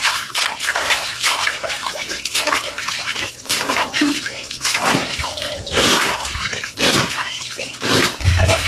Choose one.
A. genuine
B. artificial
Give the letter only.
B